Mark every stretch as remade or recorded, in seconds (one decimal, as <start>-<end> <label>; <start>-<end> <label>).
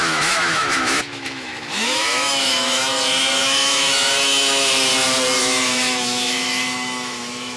0.0-4.9 remade; 4.9-5.4 recorded; 5.4-7.6 remade